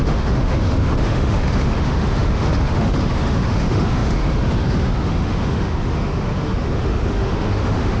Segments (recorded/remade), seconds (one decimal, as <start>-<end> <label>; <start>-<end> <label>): 0.0-8.0 remade